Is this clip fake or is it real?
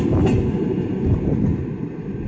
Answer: real